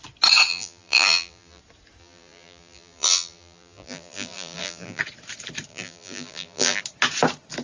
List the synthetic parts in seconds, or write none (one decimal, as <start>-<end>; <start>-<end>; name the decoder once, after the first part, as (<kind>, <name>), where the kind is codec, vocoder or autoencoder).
0.5-1.6 (vocoder, BigVGAN v2); 2.0-5.0; 5.7-6.8